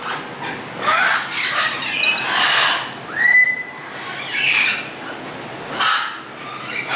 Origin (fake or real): real